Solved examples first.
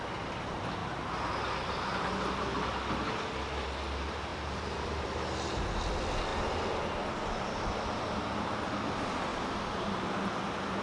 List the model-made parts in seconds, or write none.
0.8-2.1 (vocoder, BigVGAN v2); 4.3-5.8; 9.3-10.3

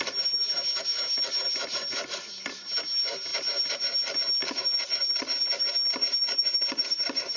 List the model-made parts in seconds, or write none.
none

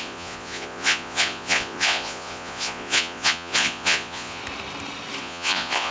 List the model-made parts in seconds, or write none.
0.0-4.4 (vocoder, Vocos); 5.2-5.9

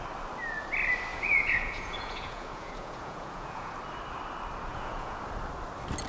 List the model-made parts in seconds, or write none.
1.1-3.7 (vocoder, Vocos); 4.7-5.2

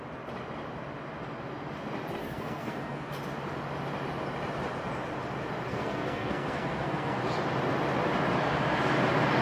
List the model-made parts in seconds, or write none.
2.2-3.1 (codec, SNAC); 5.7-7.2

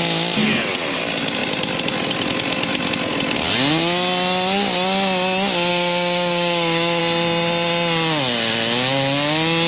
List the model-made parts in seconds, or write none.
5.7-7.0 (codec, DAC)